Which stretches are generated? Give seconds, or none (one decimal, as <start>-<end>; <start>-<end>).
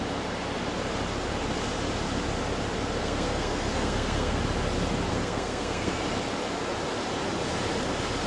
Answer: 3.0-4.4; 5.1-6.0